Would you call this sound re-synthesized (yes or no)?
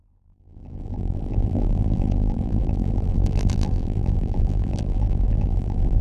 yes